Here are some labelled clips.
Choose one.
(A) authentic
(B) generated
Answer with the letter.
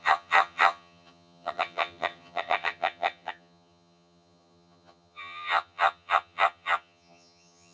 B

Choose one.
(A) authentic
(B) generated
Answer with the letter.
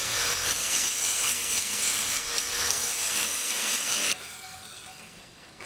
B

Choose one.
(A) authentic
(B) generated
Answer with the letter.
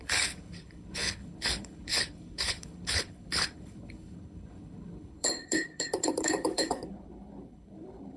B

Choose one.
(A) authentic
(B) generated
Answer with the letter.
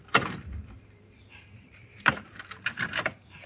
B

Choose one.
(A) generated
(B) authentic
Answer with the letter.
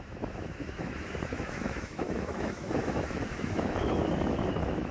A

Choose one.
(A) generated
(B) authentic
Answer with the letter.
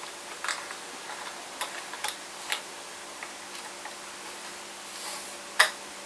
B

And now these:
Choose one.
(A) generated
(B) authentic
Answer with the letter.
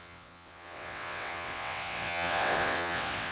A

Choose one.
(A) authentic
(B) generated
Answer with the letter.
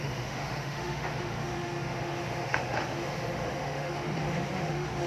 B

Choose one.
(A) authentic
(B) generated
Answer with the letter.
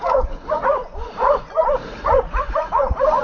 B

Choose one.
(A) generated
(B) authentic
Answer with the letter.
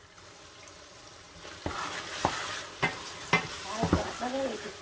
B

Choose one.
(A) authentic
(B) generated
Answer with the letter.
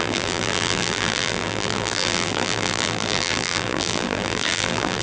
B